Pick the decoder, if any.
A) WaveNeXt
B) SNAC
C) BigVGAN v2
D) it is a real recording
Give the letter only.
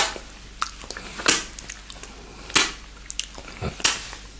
D